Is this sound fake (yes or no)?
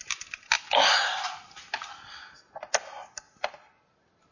no